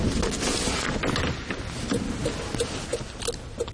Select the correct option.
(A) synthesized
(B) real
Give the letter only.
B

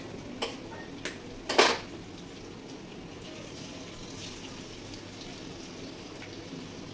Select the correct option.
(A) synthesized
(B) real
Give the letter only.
B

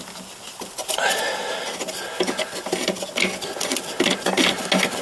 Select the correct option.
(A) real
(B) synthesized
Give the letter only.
A